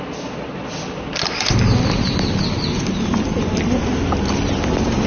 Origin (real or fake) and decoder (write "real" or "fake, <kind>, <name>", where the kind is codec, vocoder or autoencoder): real